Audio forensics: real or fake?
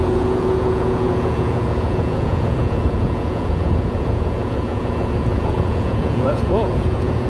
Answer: fake